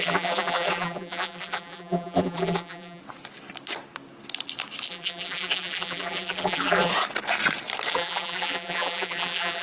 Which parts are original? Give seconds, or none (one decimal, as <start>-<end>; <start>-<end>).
3.0-4.9; 6.9-7.9